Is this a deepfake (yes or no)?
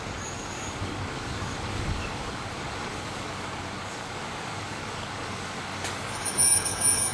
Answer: yes